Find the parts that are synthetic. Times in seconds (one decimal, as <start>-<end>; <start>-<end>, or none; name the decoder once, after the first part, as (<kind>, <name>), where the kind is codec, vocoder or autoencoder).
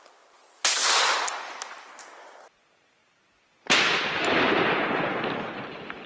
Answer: none